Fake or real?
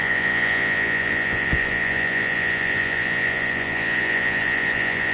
fake